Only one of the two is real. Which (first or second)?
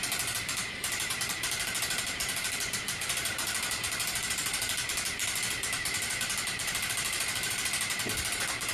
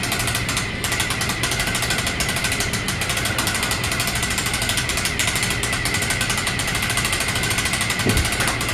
second